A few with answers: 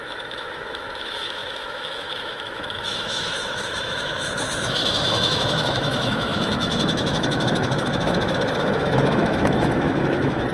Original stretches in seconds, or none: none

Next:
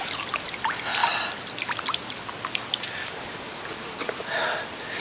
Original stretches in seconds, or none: 0.0-5.0

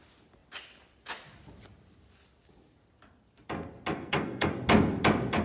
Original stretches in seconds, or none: 0.0-3.9; 4.5-5.4

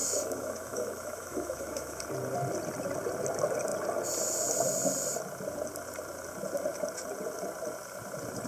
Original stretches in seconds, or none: 2.0-8.5